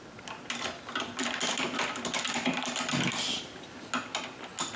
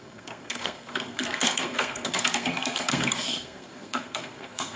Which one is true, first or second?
first